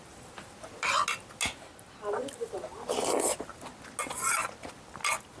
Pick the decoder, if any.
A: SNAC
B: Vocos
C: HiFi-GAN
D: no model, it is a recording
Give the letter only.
D